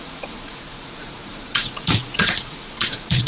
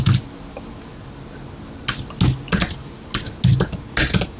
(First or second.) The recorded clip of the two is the second